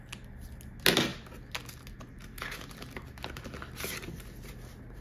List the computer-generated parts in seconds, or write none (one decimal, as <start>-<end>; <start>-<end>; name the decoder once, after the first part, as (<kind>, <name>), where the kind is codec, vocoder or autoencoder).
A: none